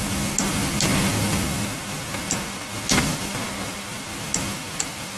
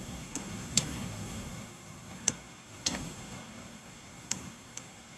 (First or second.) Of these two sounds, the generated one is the second